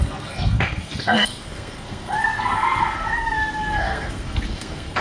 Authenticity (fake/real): fake